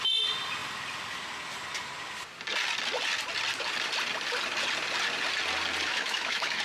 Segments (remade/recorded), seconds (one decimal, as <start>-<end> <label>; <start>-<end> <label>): 0.0-5.9 recorded; 5.9-6.6 remade